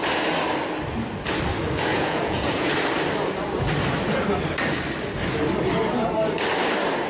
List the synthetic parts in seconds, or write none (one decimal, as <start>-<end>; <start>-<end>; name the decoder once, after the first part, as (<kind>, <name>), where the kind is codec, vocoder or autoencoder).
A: 1.9-2.7 (vocoder, Vocos)

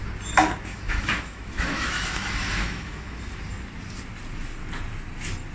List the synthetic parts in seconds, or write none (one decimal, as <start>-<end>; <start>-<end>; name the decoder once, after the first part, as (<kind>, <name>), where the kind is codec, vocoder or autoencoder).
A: 0.7-3.2 (autoencoder, DAC-VAE)

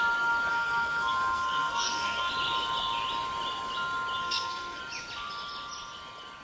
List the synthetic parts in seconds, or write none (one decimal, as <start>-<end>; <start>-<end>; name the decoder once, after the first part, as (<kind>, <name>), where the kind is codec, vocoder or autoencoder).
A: 0.5-2.3 (codec, SNAC); 4.2-4.8

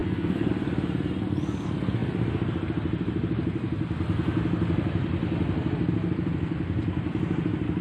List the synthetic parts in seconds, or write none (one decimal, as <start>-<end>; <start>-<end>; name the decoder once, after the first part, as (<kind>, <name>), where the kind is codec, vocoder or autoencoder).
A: 0.0-0.5 (codec, SNAC)

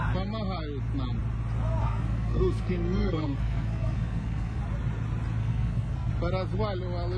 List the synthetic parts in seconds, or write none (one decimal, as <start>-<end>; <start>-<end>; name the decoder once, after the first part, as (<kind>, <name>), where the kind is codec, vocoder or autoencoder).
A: 1.8-4.6 (codec, SNAC); 5.4-6.1

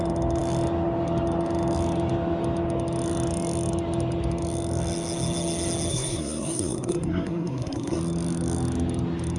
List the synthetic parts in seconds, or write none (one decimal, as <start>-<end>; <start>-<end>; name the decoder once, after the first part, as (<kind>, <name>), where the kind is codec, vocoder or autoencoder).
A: 5.9-8.0 (codec, SNAC)

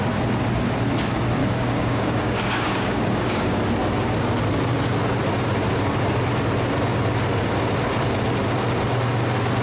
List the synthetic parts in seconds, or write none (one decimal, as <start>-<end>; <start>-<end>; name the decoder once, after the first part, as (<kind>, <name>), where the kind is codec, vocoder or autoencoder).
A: 1.4-3.6 (codec, DAC)